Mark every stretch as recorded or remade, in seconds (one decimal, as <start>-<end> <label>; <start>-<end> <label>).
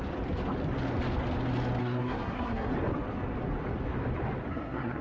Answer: 0.0-1.8 recorded; 1.8-2.7 remade; 2.7-4.5 recorded; 4.5-5.0 remade